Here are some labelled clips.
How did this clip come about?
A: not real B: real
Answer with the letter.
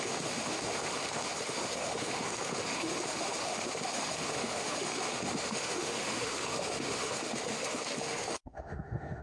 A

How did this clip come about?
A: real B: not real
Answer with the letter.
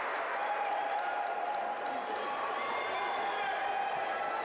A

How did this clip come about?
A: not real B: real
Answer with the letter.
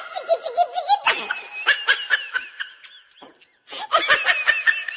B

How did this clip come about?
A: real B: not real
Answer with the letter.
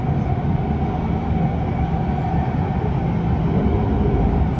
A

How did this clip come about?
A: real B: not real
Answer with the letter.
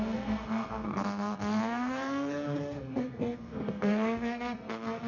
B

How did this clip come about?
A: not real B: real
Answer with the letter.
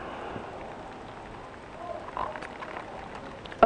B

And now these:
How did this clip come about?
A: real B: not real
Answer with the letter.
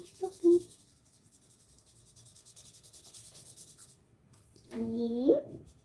B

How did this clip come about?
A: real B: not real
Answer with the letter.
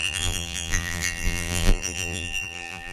B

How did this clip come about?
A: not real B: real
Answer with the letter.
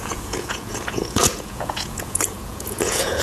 A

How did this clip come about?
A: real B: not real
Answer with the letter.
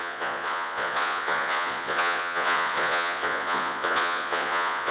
B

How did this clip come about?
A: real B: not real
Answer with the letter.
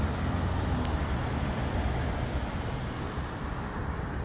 A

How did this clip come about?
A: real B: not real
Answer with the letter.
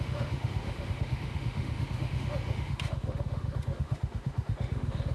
B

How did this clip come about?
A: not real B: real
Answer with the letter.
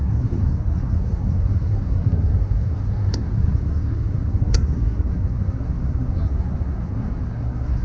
A